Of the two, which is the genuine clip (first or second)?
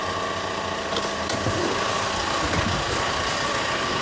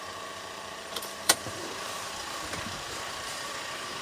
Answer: first